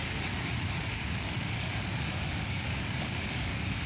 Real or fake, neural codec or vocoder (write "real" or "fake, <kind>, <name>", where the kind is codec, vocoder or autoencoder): fake, codec, DAC